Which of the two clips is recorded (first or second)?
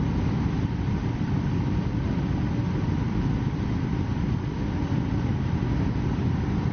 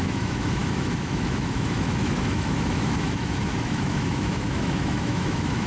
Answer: first